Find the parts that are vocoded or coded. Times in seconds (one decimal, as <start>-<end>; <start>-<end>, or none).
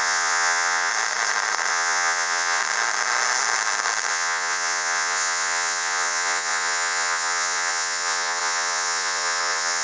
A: 0.0-0.9; 1.7-2.6; 4.1-9.8